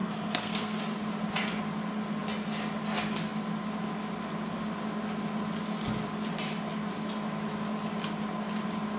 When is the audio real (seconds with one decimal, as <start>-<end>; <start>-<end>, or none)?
0.8-9.0